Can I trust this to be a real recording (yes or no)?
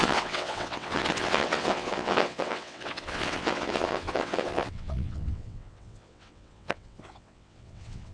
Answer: no